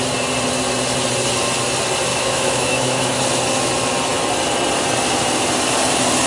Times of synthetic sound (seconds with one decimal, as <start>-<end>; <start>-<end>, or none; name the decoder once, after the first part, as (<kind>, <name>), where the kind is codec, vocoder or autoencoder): 2.1-3.2 (autoencoder, DAC-VAE)